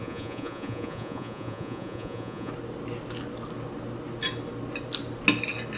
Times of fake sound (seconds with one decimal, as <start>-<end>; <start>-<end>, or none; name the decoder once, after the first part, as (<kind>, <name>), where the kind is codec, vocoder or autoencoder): 0.0-2.5 (vocoder, Vocos)